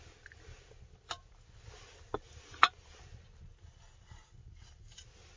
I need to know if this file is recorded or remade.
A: recorded